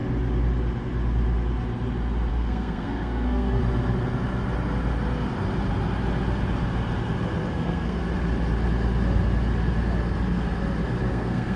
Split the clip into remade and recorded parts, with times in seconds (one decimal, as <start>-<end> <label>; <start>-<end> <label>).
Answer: 0.0-2.3 recorded; 2.3-3.6 remade; 3.6-7.5 recorded; 7.5-8.0 remade; 8.0-11.1 recorded; 11.1-11.6 remade

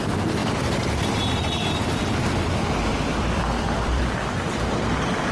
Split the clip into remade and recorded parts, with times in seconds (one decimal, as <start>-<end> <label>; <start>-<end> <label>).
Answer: 0.0-0.4 recorded; 0.4-2.4 remade; 2.4-2.9 recorded; 2.9-4.5 remade; 4.5-5.3 recorded

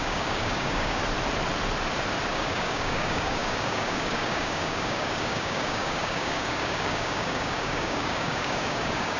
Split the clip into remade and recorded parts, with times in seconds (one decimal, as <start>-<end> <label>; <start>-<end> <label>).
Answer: 0.0-1.0 remade; 1.0-2.3 recorded; 2.3-9.2 remade

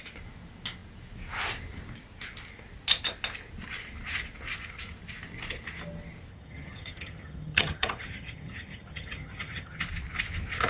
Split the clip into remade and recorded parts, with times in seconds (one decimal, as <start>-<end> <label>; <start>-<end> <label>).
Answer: 0.0-6.3 recorded; 6.3-9.8 remade; 9.8-10.7 recorded